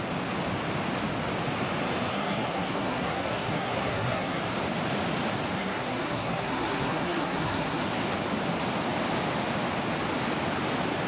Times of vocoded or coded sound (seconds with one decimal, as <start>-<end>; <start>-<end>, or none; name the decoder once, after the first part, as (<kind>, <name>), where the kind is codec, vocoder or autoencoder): 2.1-4.4 (codec, SNAC); 5.6-7.8